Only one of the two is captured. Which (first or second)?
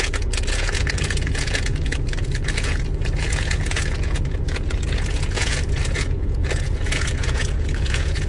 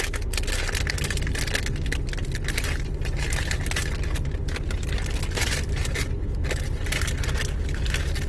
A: second